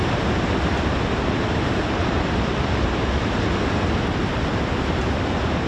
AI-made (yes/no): no